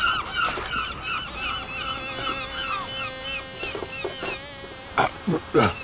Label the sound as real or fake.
real